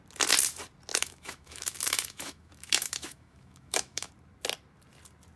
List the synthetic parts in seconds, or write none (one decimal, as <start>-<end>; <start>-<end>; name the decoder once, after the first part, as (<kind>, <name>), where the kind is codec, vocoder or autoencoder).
0.9-4.1 (autoencoder, DAC-VAE)